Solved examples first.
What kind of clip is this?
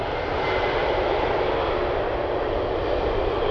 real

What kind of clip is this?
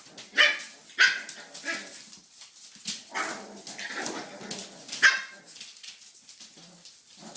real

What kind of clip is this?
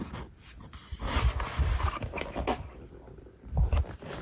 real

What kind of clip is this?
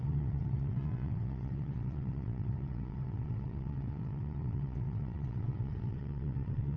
fake